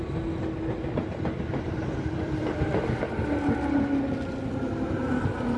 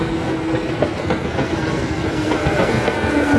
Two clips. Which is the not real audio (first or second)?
second